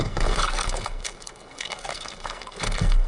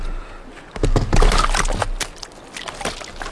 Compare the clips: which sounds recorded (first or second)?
second